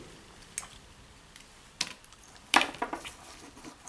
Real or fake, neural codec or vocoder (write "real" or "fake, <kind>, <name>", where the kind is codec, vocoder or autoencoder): real